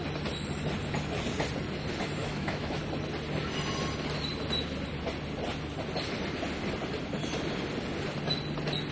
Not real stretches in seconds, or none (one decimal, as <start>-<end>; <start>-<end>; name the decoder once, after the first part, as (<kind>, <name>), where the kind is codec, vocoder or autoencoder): 2.2-2.8 (autoencoder, DAC-VAE)